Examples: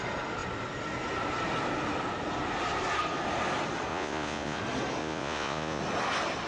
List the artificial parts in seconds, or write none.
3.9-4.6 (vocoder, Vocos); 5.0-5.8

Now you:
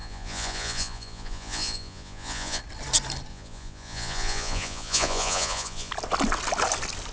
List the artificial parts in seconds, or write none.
0.0-2.6 (vocoder, Vocos); 3.3-5.9

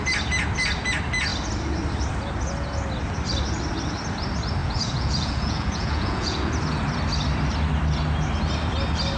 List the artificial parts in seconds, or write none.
4.6-6.5 (vocoder, Vocos)

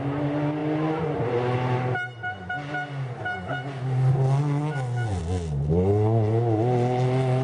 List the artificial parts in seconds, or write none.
none

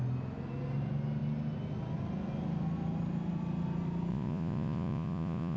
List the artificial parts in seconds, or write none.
4.1-5.6 (vocoder, Vocos)

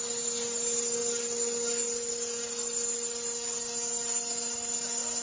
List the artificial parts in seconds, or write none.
none

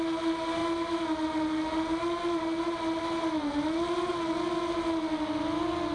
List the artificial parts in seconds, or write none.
none

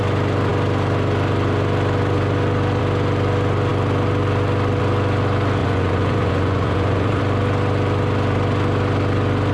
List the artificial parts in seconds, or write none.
5.6-7.2 (vocoder, Vocos)